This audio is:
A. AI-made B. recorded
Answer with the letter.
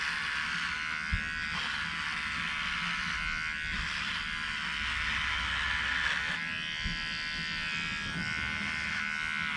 B